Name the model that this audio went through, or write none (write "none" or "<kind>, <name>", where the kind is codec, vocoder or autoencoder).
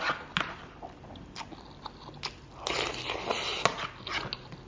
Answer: none